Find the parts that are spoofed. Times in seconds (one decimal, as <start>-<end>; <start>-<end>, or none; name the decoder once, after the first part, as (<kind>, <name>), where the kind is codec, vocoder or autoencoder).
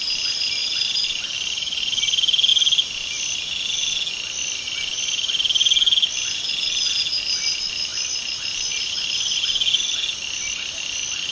0.6-1.2 (vocoder, BigVGAN v2)